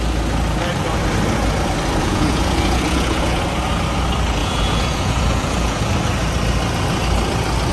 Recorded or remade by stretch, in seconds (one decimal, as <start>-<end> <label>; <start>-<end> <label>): 0.0-2.0 recorded; 2.0-3.4 remade; 3.4-4.4 recorded; 4.4-5.9 remade; 5.9-7.7 recorded